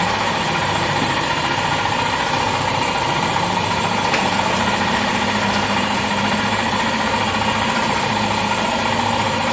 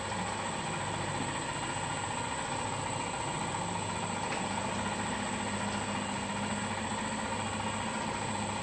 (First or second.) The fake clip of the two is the first